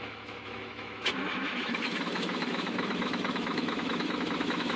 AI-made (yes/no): yes